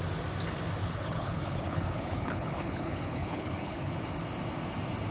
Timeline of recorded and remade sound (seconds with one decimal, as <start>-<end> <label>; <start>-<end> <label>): 0.0-0.8 recorded; 0.8-3.9 remade; 3.9-5.1 recorded